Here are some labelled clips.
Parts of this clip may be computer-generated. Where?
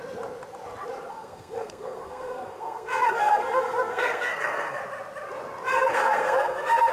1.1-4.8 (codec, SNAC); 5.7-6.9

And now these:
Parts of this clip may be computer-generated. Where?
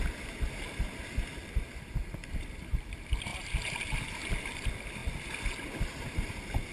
none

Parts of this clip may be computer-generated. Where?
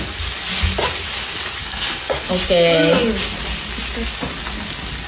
1.6-2.3 (codec, SNAC)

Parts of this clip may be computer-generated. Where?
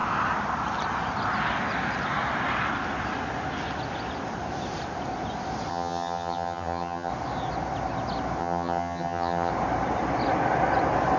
5.7-7.1 (vocoder, HiFi-GAN); 8.4-9.5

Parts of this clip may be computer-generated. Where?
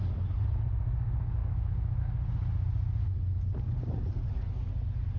1.4-2.0 (autoencoder, DAC-VAE)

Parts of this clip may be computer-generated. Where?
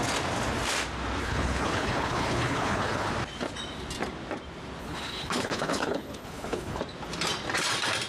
1.2-3.1 (codec, HILCodec); 4.8-6.8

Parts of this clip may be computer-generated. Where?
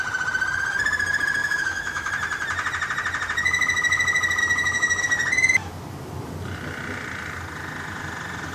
1.4-2.1 (autoencoder, DAC-VAE); 4.4-5.0